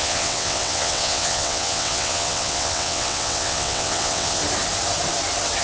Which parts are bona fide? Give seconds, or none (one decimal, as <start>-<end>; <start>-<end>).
4.4-5.6